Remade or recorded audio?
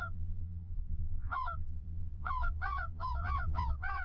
remade